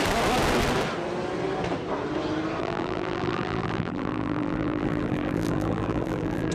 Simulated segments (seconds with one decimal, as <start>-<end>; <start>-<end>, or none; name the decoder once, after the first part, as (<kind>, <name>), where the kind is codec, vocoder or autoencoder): 2.6-6.5 (vocoder, BigVGAN v2)